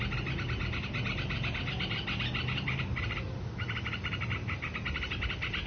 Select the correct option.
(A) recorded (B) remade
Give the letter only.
A